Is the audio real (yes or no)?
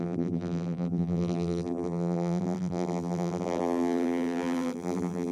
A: no